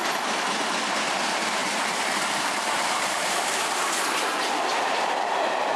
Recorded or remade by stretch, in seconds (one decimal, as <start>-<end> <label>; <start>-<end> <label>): 0.0-1.6 recorded; 1.6-3.9 remade; 3.9-4.7 recorded; 4.7-5.8 remade